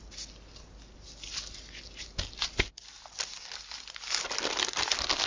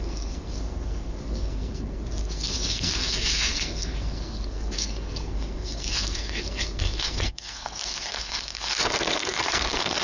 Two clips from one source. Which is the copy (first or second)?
second